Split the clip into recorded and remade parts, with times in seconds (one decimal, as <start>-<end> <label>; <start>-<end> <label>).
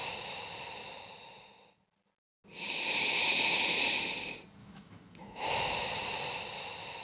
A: 0.0-4.6 recorded; 4.6-5.6 remade; 5.6-7.0 recorded